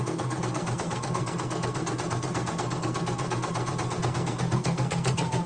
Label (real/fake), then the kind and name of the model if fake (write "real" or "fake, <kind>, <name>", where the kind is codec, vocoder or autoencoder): fake, codec, SNAC